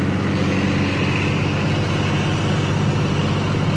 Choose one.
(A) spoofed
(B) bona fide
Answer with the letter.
B